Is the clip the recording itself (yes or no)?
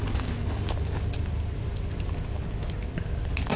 yes